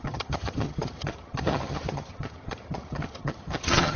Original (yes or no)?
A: no